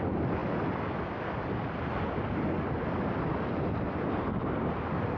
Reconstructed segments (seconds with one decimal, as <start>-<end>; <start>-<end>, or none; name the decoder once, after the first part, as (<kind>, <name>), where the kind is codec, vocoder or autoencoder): none